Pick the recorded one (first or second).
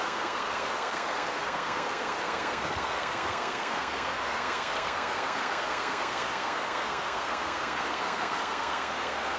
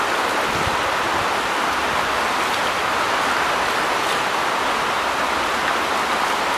second